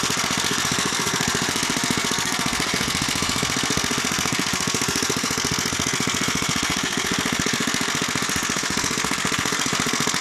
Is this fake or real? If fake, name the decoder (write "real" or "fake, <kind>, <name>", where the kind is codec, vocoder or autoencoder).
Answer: fake, codec, SNAC